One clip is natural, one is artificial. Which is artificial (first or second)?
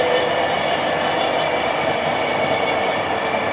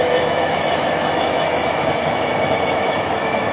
second